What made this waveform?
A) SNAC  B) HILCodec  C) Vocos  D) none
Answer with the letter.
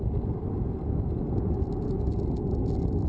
D